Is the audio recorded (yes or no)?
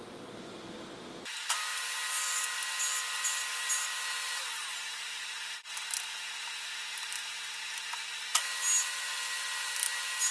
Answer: yes